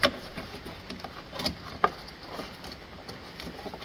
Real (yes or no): yes